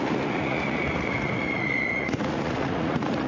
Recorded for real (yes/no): no